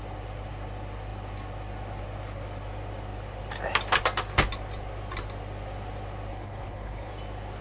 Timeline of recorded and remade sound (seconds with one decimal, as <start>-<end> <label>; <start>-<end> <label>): 0.0-6.3 recorded; 6.3-7.1 remade; 7.1-7.6 recorded